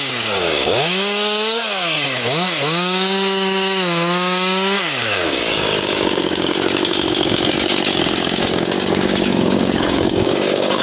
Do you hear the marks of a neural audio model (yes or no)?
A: yes